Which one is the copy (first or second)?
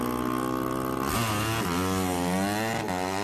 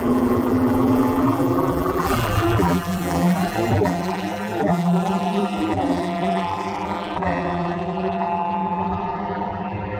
second